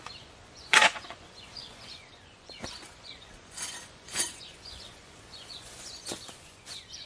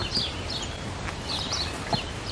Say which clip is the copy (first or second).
first